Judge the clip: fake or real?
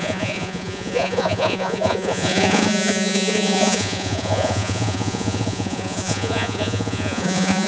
fake